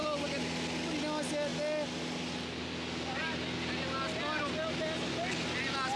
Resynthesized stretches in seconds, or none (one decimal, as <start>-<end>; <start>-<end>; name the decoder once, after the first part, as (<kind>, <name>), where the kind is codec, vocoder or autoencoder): none